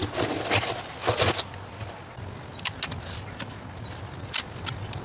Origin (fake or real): real